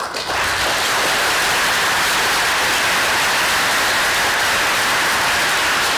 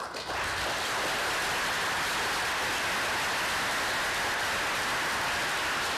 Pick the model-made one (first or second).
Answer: first